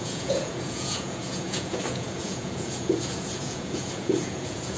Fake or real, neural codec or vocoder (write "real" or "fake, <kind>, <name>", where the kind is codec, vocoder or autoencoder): fake, vocoder, Vocos